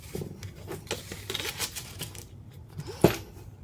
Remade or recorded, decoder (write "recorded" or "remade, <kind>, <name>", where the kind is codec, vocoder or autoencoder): recorded